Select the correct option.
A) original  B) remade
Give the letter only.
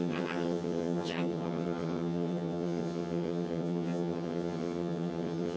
B